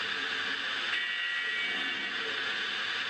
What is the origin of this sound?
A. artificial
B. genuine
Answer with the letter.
B